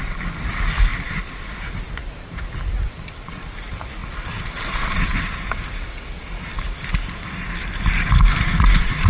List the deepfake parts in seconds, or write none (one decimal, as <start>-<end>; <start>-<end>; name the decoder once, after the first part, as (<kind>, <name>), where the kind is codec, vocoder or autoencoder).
0.9-1.4 (vocoder, BigVGAN v2); 2.0-3.4